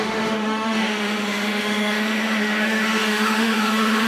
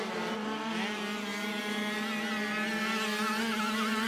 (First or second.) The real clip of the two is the second